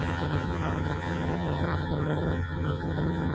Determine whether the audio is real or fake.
fake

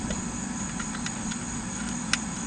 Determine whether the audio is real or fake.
real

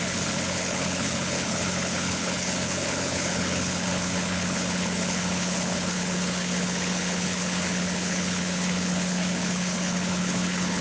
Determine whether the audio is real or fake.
fake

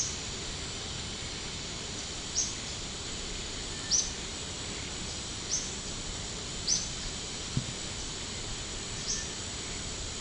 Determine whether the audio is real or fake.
fake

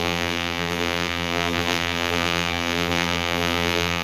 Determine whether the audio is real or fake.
fake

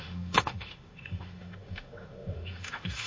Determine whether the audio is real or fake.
fake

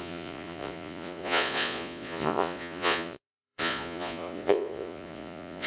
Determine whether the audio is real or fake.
fake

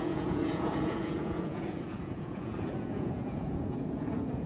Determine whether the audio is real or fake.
fake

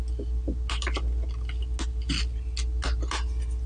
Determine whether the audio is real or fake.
real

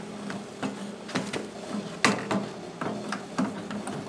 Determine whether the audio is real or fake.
real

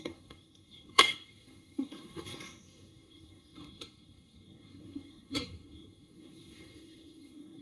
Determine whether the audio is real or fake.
fake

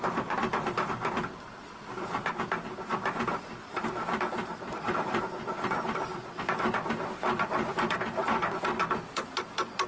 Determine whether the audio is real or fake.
fake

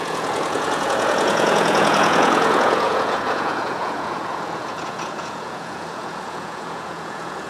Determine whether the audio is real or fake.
fake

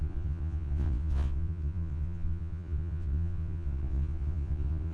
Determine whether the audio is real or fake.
fake